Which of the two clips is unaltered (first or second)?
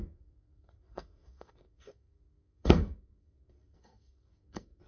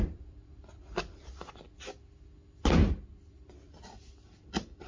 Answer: second